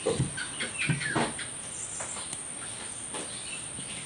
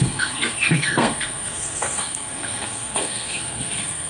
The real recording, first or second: first